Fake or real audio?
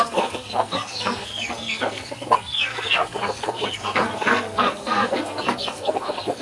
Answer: fake